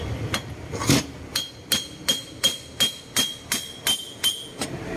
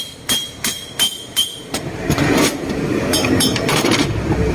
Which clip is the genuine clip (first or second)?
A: first